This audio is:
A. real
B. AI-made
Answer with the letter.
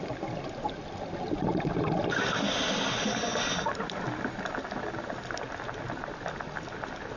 A